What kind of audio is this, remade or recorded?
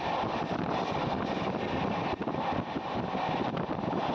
recorded